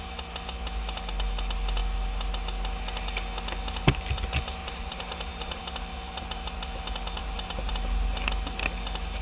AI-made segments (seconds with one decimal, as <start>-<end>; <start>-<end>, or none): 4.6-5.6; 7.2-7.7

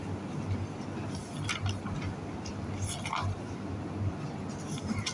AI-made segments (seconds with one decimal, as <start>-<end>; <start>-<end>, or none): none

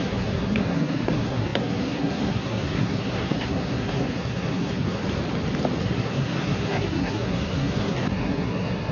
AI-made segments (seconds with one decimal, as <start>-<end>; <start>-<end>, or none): 0.0-5.0; 5.8-8.9

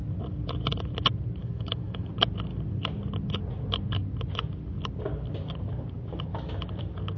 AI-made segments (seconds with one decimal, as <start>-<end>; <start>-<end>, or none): 1.4-2.1

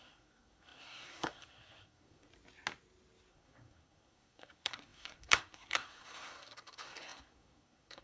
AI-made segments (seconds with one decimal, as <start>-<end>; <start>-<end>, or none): 0.0-2.3; 3.3-8.0